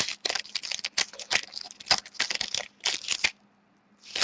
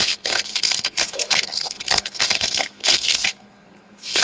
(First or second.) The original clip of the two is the first